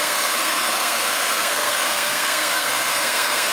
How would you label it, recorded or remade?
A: remade